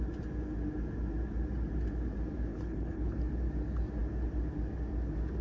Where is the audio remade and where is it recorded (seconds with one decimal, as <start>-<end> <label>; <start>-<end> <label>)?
0.0-2.5 recorded; 2.5-3.2 remade; 3.2-5.4 recorded